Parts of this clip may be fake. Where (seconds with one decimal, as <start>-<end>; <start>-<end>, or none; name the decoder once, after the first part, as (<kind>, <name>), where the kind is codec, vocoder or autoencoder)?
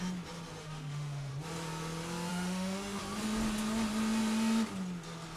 0.6-1.3 (autoencoder, DAC-VAE); 2.3-3.0